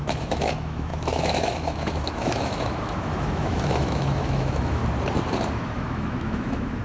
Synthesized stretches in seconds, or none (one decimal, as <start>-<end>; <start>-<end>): 0.0-4.8; 5.5-6.8